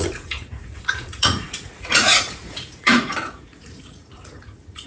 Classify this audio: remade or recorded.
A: remade